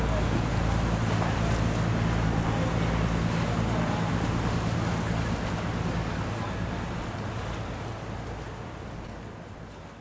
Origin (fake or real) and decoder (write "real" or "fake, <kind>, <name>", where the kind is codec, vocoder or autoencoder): real